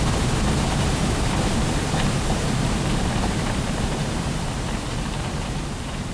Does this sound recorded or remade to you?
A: remade